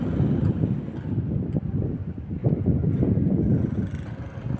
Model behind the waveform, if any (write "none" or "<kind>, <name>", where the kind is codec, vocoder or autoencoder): none